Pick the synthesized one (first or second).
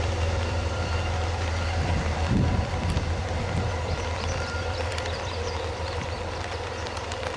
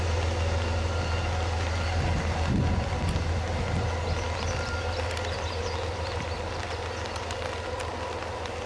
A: first